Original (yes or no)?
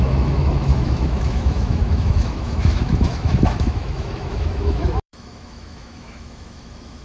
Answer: no